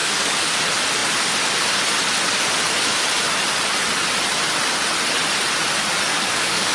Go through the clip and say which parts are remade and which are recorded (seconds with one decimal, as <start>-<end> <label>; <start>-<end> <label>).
0.0-0.6 remade; 0.6-6.1 recorded; 6.1-6.7 remade